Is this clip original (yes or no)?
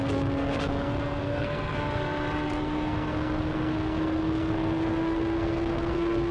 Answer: no